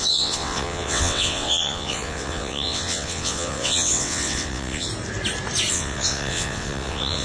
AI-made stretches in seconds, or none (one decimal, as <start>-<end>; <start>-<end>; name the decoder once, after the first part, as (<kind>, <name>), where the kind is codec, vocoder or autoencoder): 0.0-4.9 (vocoder, WaveNeXt); 5.7-7.2